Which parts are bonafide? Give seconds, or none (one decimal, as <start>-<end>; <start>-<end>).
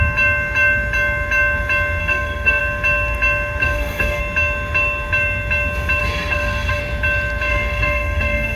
0.0-2.0; 2.6-3.6; 4.2-6.0; 6.8-7.5